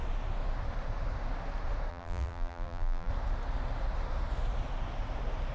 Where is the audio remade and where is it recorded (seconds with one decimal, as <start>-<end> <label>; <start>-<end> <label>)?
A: 0.0-1.9 recorded; 1.9-3.1 remade; 3.1-5.5 recorded